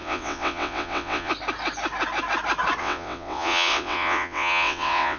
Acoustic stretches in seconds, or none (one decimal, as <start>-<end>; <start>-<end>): 1.3-2.8